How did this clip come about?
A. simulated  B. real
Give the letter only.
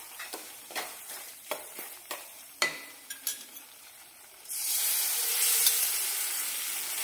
A